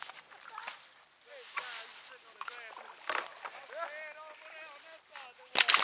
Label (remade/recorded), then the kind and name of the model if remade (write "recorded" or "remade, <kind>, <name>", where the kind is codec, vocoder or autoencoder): recorded